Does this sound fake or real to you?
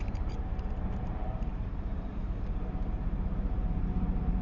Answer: fake